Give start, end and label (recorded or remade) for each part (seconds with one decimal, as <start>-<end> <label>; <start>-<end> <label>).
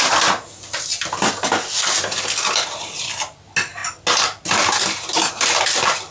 0.0-6.1 recorded